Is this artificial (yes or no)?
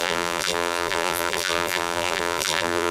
yes